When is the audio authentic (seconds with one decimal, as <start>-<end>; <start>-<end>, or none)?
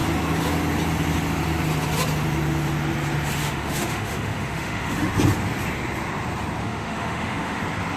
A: 0.0-3.4; 5.1-6.6; 7.6-8.0